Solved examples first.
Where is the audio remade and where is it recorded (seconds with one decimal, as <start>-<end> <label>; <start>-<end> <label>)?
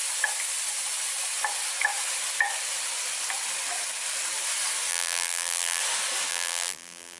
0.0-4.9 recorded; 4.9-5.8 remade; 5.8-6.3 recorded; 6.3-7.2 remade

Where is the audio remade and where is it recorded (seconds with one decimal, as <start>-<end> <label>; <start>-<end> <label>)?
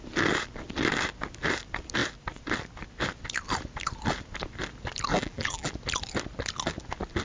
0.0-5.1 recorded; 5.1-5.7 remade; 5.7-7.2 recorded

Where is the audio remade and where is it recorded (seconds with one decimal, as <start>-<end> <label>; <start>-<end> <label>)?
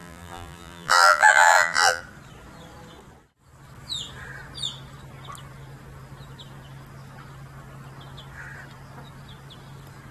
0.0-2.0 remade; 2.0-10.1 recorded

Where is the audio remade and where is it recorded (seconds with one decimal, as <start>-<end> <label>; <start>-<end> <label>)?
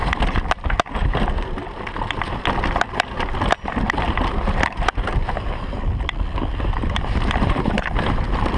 0.0-4.9 recorded; 4.9-8.6 remade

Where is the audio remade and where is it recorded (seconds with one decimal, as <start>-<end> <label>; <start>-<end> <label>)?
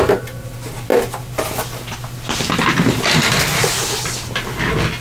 0.0-0.9 recorded; 0.9-3.9 remade; 3.9-5.0 recorded